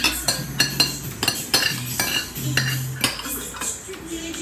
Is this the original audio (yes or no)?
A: yes